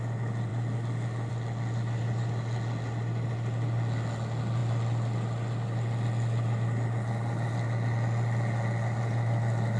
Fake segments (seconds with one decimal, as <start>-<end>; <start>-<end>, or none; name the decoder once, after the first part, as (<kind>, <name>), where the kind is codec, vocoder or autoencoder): none